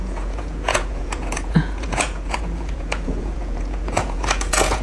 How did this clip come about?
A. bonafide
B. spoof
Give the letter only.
B